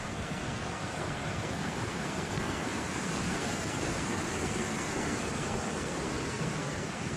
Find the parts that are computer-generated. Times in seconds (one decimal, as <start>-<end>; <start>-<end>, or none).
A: 0.0-7.2